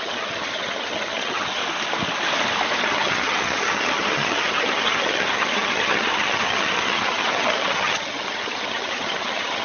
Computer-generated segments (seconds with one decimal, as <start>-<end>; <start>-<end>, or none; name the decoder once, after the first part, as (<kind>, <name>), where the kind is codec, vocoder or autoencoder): 0.0-1.6 (vocoder, HiFi-GAN); 2.8-9.6